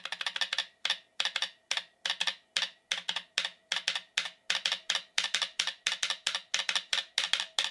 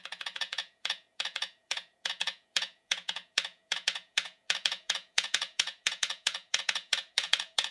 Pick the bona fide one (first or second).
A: first